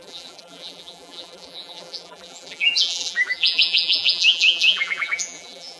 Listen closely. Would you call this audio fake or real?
fake